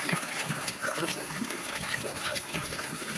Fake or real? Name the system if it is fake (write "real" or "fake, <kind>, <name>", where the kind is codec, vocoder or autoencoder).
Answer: fake, codec, SNAC